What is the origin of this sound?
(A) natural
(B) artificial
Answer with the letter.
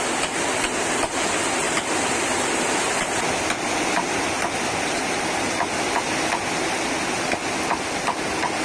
A